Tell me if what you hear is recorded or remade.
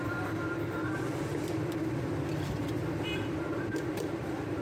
remade